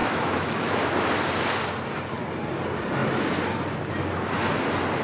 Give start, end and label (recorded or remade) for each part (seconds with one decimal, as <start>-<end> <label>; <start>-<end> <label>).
0.0-0.8 remade; 0.8-5.0 recorded